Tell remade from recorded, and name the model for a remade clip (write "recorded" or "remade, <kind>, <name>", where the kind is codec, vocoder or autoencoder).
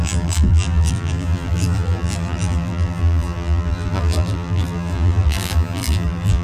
remade, vocoder, BigVGAN v2